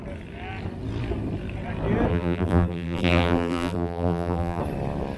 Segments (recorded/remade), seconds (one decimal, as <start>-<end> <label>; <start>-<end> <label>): 0.0-2.1 recorded; 2.1-4.6 remade; 4.6-5.2 recorded